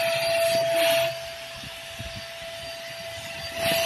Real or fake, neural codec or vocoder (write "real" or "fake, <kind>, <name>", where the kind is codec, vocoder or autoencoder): real